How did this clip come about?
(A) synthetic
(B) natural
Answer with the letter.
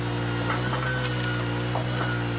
B